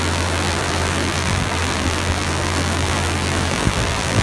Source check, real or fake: fake